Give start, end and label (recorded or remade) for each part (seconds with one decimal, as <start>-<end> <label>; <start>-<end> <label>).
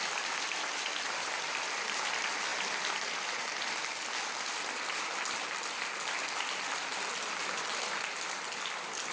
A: 0.0-9.1 recorded